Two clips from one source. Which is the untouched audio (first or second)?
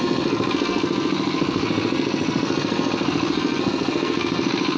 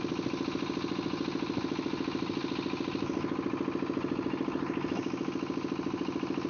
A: second